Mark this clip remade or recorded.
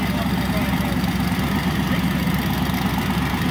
recorded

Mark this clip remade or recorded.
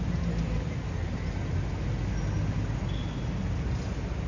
recorded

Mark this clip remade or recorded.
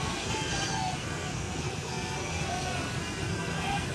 remade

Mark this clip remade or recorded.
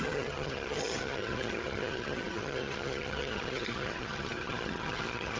remade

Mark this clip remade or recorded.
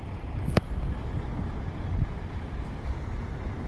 recorded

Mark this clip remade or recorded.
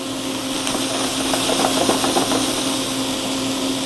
recorded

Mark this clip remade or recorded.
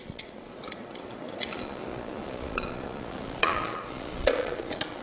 remade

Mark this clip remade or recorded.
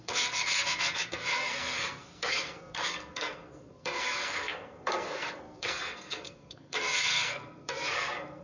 remade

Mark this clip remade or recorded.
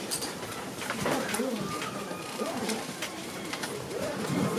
remade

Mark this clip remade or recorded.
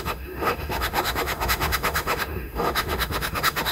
remade